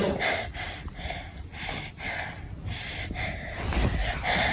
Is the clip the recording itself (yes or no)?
yes